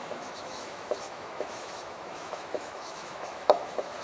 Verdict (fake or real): fake